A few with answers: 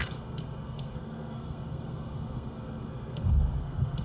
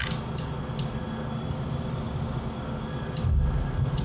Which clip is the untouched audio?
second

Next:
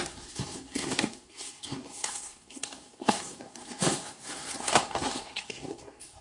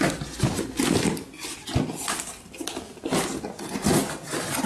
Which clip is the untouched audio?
second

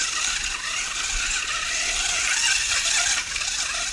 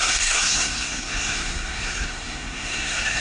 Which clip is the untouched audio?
first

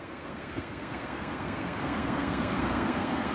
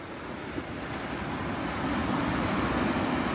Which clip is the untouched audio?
second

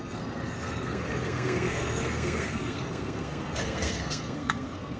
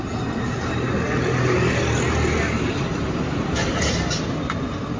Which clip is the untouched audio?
second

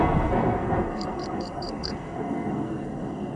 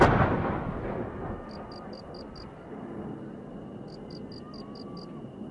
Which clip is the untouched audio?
second